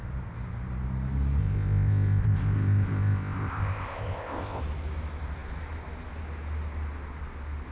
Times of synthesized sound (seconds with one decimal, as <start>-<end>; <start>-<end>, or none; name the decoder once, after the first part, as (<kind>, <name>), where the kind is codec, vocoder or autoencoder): 1.4-4.6 (codec, ZipCodec)